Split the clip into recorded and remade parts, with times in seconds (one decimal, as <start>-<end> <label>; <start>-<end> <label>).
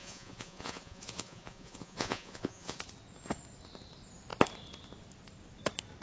0.0-2.8 remade; 2.8-6.0 recorded